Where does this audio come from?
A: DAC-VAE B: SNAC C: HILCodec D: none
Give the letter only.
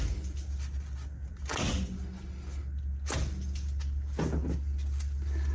D